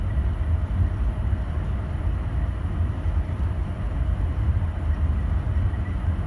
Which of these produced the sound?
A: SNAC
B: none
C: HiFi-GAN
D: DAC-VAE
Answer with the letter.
B